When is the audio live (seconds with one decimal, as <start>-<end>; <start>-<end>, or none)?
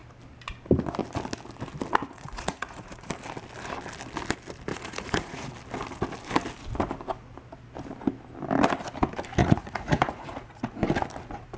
0.0-2.0; 3.1-4.7; 5.5-9.4; 10.8-11.6